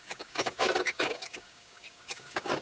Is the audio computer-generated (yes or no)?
yes